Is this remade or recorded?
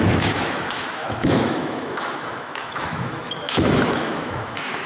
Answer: remade